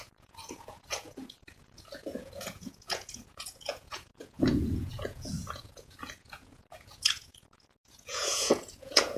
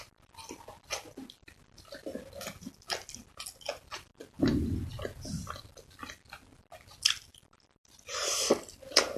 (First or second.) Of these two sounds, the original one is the second